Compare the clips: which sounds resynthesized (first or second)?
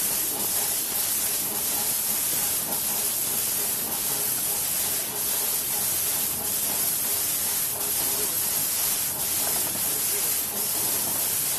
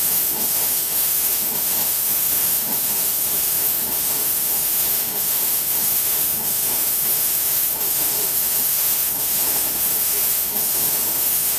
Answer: second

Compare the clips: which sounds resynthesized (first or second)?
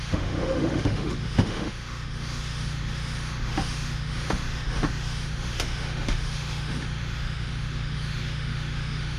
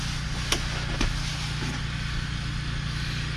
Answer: first